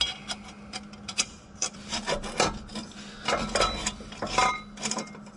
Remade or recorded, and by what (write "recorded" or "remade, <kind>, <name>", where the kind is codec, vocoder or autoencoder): recorded